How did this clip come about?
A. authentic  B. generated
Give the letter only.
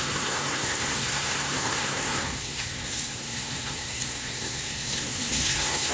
B